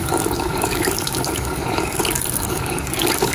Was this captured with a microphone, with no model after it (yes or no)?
no